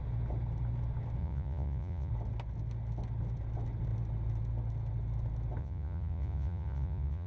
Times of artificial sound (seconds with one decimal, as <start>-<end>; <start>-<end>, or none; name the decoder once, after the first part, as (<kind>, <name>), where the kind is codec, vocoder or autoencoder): 1.2-2.1 (vocoder, Vocos); 5.6-7.3